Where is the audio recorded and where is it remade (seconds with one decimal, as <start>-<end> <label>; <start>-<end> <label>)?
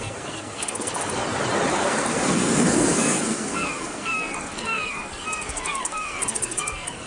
0.0-1.2 remade; 1.2-1.7 recorded; 1.7-7.1 remade